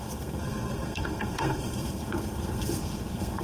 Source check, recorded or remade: remade